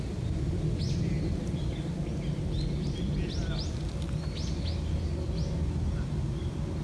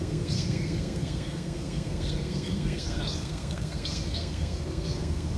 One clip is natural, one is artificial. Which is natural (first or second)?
first